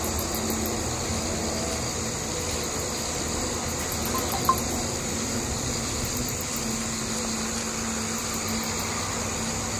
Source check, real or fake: real